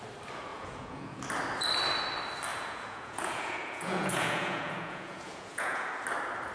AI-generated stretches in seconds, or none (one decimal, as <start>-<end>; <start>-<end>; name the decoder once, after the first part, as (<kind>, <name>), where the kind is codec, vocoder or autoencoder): 0.5-1.2 (vocoder, Vocos); 2.5-5.9